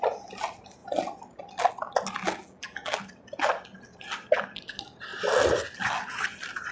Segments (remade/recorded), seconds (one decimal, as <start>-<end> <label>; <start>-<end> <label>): 0.0-2.4 recorded; 2.4-3.0 remade; 3.0-6.7 recorded